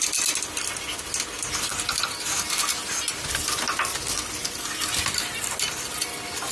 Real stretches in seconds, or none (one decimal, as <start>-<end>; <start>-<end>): 0.0-6.5